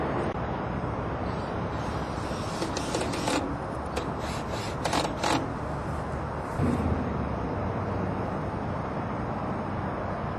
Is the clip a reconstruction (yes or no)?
no